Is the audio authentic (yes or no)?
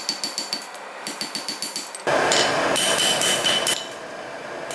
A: yes